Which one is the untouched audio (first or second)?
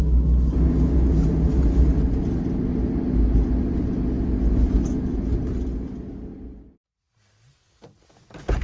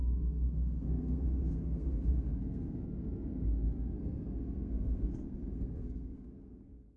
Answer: first